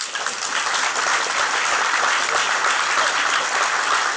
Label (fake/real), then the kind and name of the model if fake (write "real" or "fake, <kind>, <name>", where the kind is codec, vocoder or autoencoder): real